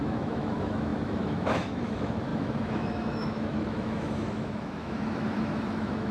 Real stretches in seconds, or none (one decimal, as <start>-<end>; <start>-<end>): none